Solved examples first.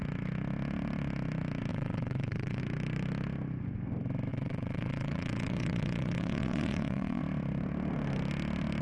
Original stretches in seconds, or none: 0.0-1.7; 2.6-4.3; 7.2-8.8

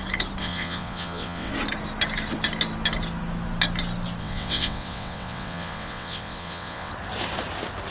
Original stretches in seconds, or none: 0.0-0.4; 1.5-4.2; 6.9-7.9